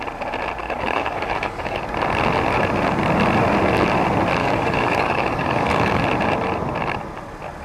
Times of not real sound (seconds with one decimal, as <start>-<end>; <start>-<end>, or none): 0.6-1.8; 4.4-6.0